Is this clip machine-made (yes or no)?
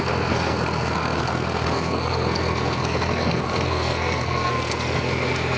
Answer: yes